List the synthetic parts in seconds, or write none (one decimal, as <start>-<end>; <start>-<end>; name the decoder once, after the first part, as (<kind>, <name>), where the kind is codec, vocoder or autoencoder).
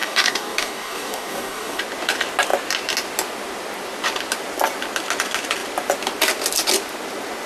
0.0-1.8 (codec, DAC)